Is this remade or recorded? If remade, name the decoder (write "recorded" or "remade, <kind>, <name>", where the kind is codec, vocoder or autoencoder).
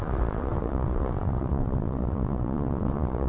remade, vocoder, WaveNeXt